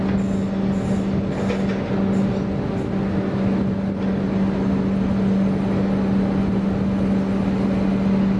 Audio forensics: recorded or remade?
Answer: recorded